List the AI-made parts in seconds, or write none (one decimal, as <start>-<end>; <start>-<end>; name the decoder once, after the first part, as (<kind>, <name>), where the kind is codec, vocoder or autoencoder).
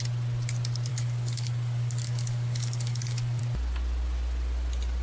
0.9-3.4 (codec, DAC)